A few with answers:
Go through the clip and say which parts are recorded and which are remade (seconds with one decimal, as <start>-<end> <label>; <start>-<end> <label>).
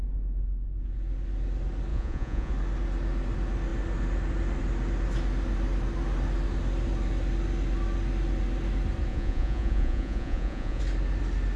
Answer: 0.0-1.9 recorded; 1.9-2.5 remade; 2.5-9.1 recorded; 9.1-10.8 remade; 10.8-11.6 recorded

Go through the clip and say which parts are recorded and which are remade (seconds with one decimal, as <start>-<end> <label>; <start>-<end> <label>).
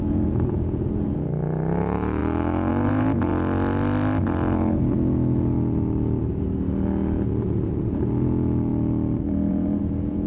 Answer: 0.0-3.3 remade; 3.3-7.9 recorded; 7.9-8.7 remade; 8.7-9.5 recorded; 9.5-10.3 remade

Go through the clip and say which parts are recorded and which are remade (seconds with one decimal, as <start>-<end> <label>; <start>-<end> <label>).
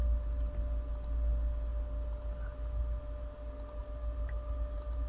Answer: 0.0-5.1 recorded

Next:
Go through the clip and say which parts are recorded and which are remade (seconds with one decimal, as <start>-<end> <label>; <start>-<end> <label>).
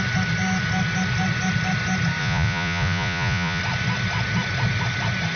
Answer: 0.0-2.2 recorded; 2.2-3.6 remade; 3.6-5.4 recorded